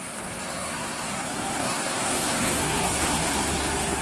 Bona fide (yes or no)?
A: no